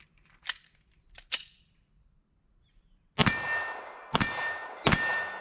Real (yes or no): yes